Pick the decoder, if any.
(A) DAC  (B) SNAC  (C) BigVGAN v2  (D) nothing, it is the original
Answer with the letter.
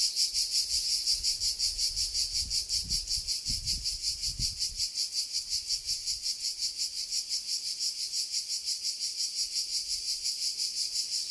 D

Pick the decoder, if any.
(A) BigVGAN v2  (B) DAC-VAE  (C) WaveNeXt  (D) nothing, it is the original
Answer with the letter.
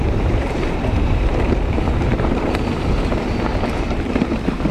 A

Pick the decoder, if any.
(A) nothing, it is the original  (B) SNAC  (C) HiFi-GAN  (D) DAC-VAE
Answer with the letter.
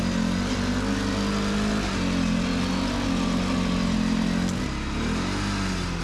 A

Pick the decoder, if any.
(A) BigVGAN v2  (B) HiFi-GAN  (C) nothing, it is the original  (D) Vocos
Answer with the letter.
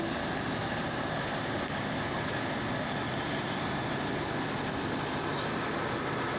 C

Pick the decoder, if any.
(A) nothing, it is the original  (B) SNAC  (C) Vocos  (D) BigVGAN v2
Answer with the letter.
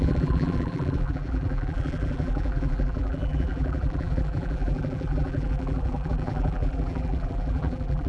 D